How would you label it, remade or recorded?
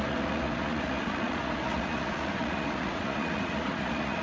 remade